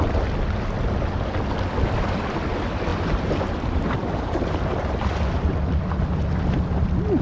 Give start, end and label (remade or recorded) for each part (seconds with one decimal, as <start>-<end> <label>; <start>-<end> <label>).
0.0-4.0 recorded; 4.0-5.1 remade; 5.1-7.2 recorded